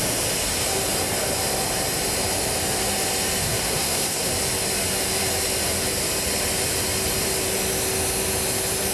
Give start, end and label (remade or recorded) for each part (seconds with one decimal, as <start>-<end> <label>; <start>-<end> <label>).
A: 0.0-3.4 recorded; 3.4-4.3 remade; 4.3-8.9 recorded